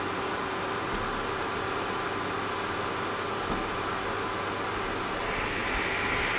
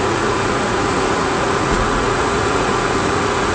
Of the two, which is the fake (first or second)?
second